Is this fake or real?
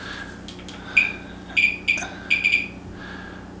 real